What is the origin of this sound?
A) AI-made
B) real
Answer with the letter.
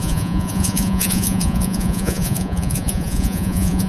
A